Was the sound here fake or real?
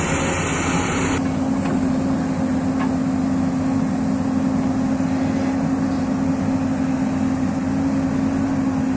real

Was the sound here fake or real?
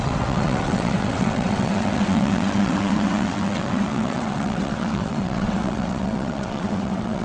fake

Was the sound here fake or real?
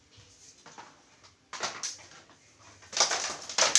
real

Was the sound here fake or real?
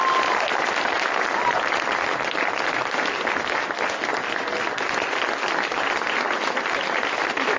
real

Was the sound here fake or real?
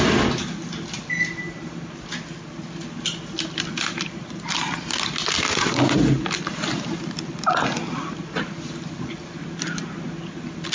real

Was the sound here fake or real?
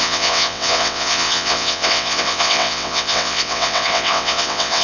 fake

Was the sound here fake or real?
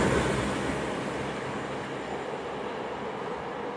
real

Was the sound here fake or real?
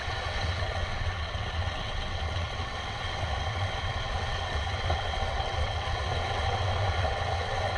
fake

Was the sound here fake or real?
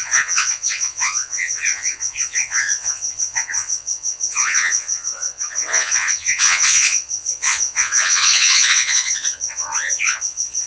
fake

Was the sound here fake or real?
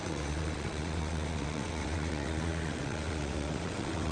fake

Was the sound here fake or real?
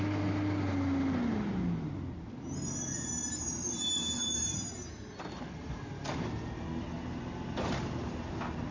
real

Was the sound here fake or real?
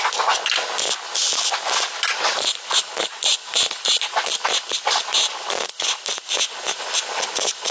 real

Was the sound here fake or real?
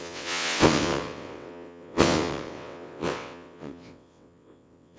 fake